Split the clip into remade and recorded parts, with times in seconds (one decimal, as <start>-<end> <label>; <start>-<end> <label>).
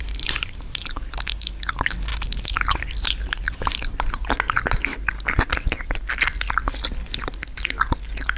0.0-8.4 recorded